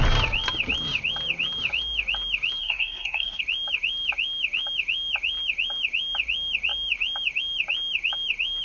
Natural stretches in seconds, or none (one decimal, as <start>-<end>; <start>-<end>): 0.0-2.6; 3.4-8.6